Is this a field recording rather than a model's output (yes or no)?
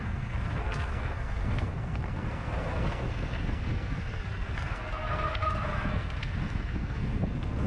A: no